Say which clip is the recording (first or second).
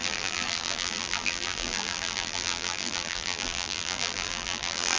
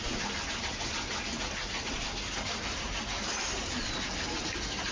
second